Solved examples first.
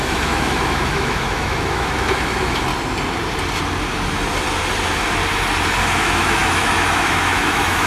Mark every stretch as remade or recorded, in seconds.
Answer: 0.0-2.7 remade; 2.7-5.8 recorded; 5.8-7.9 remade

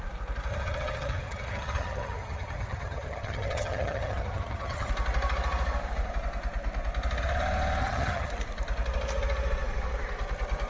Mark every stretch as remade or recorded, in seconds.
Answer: 0.0-0.5 recorded; 0.5-4.9 remade; 4.9-7.8 recorded; 7.8-8.3 remade; 8.3-10.7 recorded

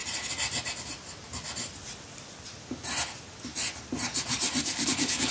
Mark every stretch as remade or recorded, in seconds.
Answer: 0.0-4.6 recorded; 4.6-5.3 remade

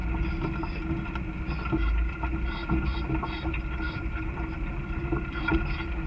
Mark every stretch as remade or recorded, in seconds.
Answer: 0.0-6.1 recorded

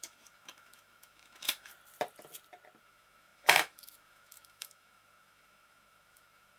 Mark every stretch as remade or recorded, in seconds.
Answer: 0.0-1.7 remade; 1.7-2.8 recorded; 2.8-6.6 remade

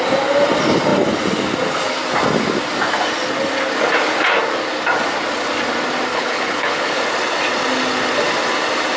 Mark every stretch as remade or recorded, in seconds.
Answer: 0.0-6.1 recorded; 6.1-7.0 remade; 7.0-9.0 recorded